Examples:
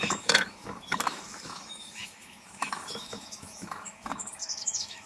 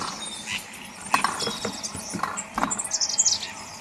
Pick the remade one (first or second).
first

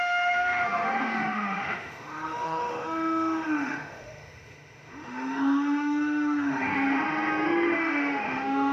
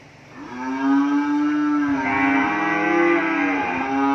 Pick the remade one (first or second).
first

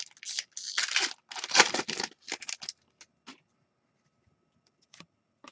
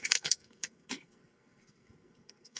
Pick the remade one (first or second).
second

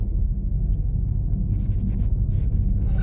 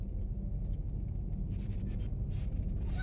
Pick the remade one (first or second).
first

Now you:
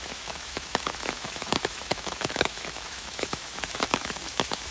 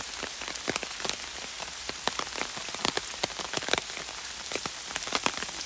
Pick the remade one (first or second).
first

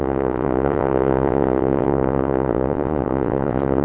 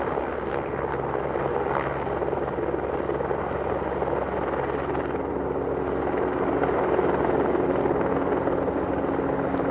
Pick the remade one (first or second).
first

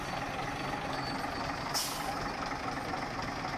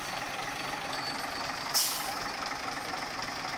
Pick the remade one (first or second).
second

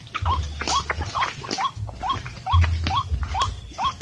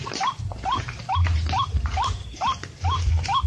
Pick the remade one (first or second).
second